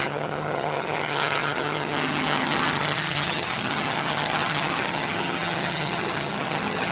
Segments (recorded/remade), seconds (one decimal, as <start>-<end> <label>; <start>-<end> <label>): 0.0-6.9 remade